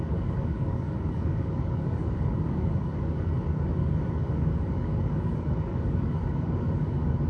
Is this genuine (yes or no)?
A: no